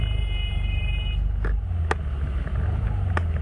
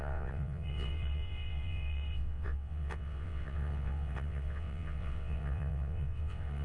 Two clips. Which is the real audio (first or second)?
first